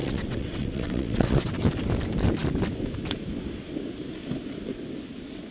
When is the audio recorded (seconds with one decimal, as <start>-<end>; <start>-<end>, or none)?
1.5-5.5